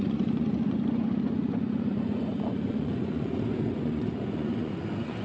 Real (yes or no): no